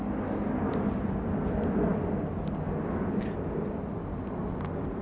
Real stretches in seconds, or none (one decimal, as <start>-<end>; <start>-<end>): 0.0-5.0